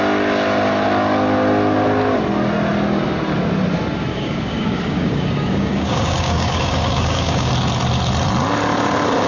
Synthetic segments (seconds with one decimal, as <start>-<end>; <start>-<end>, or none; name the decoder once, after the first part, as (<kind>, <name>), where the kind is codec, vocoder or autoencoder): 4.1-7.5 (codec, DAC)